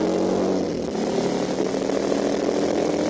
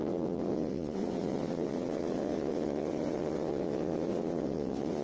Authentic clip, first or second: first